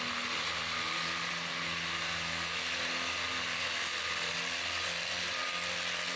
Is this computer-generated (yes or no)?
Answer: no